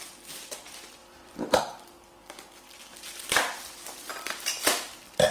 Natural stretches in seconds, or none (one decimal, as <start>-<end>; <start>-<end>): 0.0-1.0; 1.6-4.1